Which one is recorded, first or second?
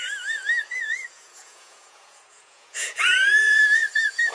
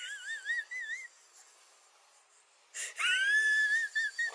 second